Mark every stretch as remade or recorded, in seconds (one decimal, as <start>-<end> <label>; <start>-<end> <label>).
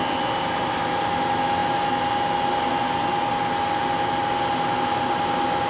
0.0-5.7 recorded